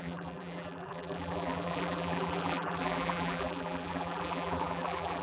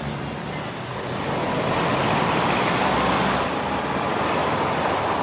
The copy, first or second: first